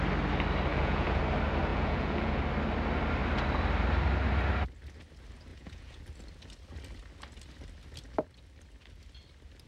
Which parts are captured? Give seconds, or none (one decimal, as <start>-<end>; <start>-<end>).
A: 0.0-0.7; 1.2-1.7; 2.4-5.5; 6.0-9.7